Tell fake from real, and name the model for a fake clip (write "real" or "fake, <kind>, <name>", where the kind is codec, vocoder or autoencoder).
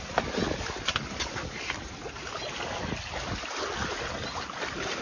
real